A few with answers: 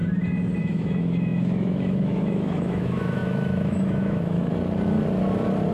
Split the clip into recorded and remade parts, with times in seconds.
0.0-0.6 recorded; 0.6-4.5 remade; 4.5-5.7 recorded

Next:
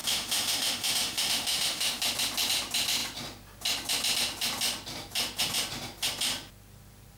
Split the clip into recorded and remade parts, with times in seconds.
0.0-2.0 remade; 2.0-7.2 recorded

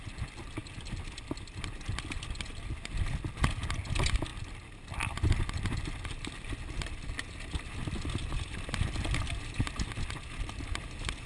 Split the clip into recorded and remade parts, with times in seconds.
0.0-11.3 recorded